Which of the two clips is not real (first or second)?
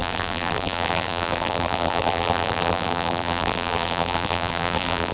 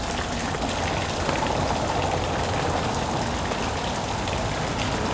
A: first